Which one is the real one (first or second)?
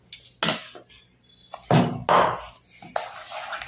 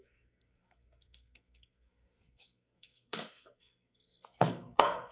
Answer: first